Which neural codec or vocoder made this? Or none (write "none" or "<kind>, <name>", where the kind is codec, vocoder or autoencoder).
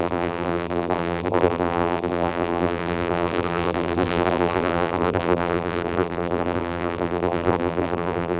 vocoder, BigVGAN v2